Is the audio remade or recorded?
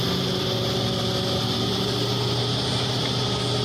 recorded